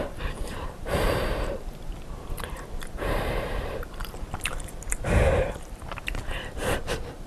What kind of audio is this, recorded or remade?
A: remade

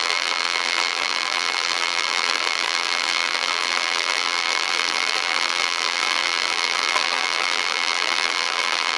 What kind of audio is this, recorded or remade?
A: remade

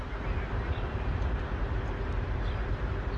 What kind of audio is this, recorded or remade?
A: recorded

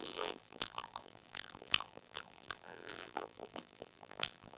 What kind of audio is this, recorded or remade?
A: remade